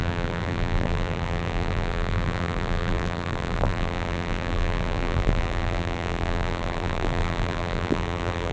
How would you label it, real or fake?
fake